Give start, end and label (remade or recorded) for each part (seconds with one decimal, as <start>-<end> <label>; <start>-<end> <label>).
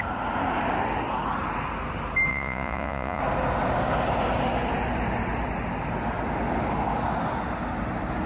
0.0-2.3 recorded; 2.3-3.2 remade; 3.2-8.3 recorded